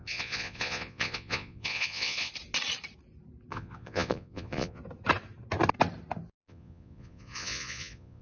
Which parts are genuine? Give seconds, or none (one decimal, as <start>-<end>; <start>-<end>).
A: 2.3-3.5; 4.8-6.4